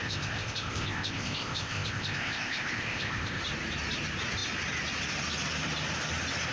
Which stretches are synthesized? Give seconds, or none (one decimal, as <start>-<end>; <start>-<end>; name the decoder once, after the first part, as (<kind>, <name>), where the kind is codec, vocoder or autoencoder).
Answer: 0.0-3.4 (codec, ZipCodec)